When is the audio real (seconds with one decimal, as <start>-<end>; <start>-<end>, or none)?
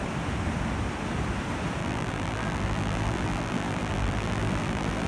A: 0.0-1.8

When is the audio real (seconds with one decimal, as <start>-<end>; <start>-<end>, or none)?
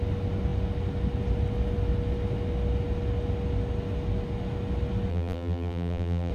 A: 0.0-5.1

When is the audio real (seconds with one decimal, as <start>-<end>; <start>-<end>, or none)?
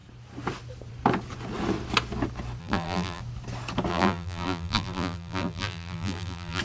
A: 0.0-2.6; 3.2-3.9